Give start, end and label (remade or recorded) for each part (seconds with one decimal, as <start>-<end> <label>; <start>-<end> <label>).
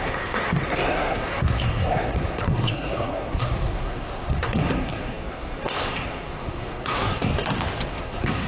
0.0-7.3 remade; 7.3-7.9 recorded; 7.9-8.5 remade